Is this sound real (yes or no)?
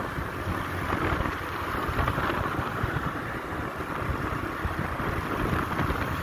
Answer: no